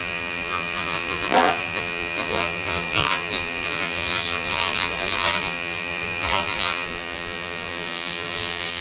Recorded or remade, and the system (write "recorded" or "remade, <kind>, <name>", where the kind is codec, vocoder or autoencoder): remade, vocoder, BigVGAN v2